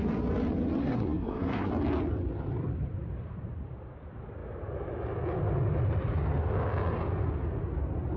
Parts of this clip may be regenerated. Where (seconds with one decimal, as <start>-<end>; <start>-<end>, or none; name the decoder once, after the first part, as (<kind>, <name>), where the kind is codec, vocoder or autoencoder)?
0.8-1.7 (codec, SNAC)